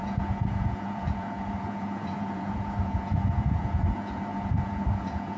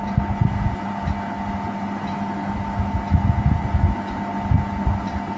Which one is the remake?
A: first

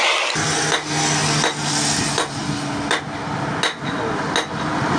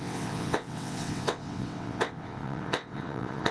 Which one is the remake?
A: second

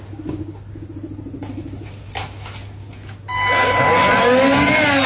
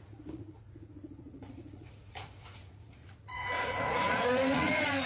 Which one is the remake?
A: second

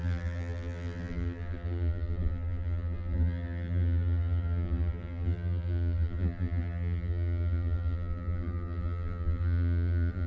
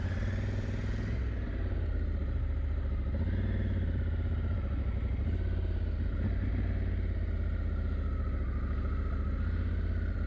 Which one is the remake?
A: first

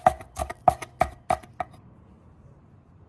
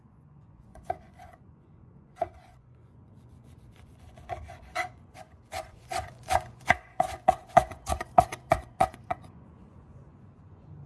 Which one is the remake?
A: second